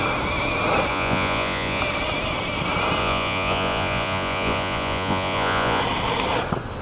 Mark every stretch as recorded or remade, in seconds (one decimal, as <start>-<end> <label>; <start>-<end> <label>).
0.0-0.9 recorded; 0.9-1.8 remade; 1.8-3.0 recorded; 3.0-5.8 remade; 5.8-6.8 recorded